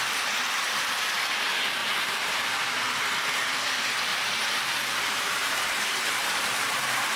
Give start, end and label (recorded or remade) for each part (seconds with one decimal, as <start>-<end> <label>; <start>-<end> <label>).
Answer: 0.0-1.8 recorded; 1.8-2.4 remade; 2.4-4.1 recorded; 4.1-7.2 remade